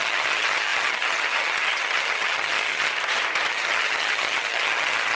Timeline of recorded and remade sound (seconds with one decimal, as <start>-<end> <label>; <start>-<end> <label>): 0.0-2.9 remade; 2.9-3.5 recorded; 3.5-5.1 remade